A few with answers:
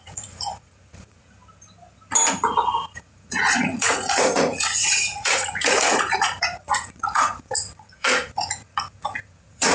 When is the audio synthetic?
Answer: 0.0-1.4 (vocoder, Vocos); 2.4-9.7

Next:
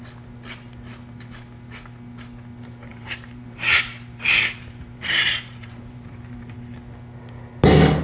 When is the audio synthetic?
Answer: 2.9-6.8 (vocoder, BigVGAN v2)